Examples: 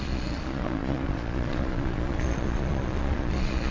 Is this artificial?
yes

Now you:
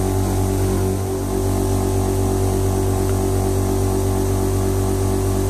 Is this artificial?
no